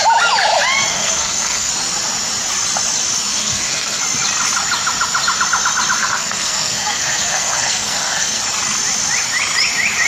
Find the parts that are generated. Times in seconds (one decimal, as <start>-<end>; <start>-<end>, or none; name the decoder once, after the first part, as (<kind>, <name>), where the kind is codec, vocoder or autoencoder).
0.9-1.7 (codec, SNAC); 3.3-4.0; 6.0-8.4